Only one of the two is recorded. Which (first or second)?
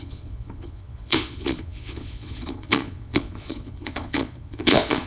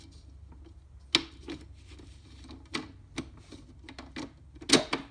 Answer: second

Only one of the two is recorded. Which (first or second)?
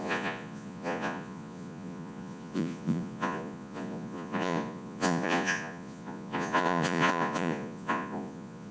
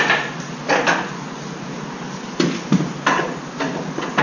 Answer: second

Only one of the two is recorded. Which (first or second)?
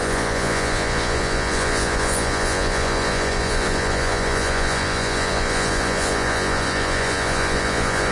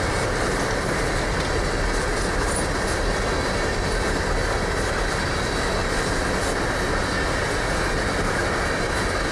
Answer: second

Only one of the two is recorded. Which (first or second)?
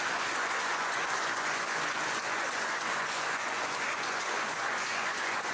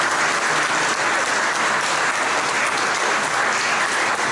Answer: second